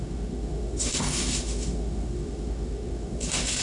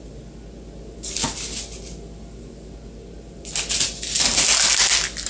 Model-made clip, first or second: first